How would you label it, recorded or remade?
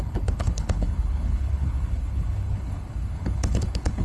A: remade